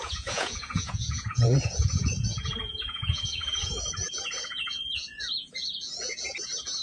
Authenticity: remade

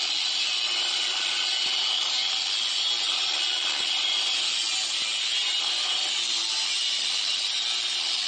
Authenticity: recorded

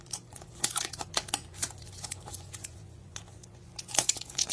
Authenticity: remade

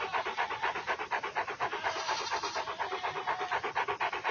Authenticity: recorded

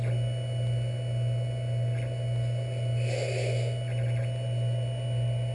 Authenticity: recorded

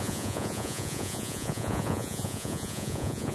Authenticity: remade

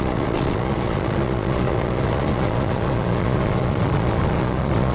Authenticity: remade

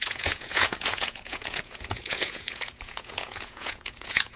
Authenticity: remade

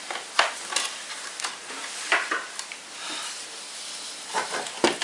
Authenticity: recorded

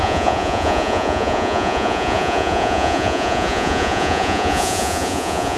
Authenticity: remade